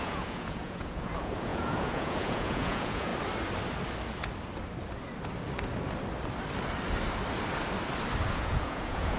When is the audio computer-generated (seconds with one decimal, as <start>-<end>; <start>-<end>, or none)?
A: 0.0-3.1; 8.3-9.2